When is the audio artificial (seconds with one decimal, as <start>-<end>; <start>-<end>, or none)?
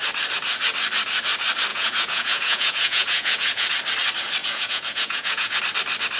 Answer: 1.7-3.7; 4.4-5.6